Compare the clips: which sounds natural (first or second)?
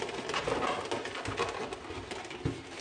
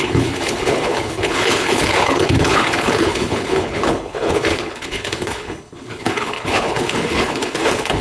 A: first